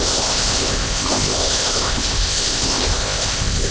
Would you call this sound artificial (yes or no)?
yes